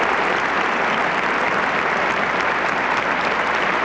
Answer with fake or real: real